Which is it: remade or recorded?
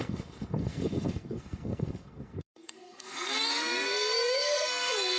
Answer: remade